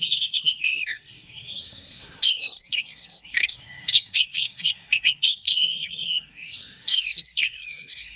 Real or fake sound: fake